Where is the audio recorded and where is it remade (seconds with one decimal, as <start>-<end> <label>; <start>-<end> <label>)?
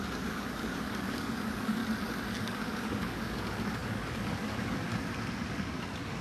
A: 0.0-1.8 remade; 1.8-2.4 recorded; 2.4-4.9 remade; 4.9-5.5 recorded; 5.5-6.2 remade